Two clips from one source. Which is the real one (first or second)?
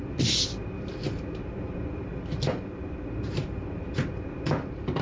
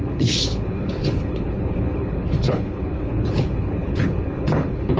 first